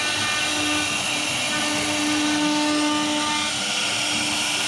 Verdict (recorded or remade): recorded